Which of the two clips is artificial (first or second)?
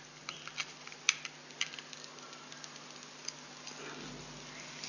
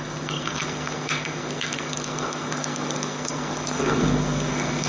second